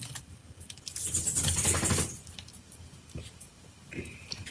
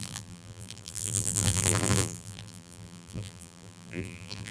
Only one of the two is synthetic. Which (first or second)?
second